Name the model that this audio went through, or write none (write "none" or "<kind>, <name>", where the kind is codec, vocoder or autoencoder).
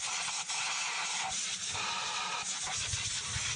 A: none